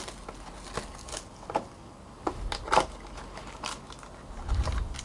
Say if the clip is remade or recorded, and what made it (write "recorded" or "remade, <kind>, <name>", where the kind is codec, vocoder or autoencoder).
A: recorded